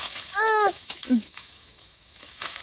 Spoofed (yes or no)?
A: yes